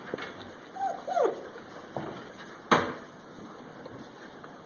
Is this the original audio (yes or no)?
yes